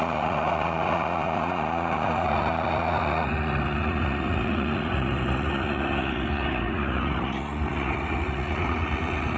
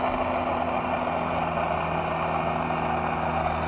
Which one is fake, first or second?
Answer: first